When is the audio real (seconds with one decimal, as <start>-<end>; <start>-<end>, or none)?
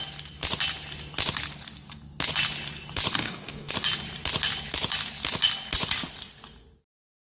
0.0-3.2; 3.7-7.2